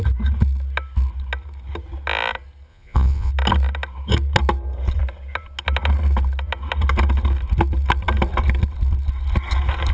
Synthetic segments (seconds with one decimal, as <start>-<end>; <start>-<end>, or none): 2.7-3.3